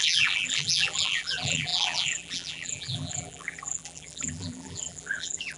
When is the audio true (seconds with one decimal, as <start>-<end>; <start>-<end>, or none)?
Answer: none